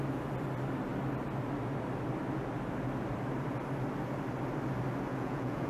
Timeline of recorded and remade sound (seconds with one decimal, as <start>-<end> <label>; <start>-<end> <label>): 0.0-5.1 recorded; 5.1-5.7 remade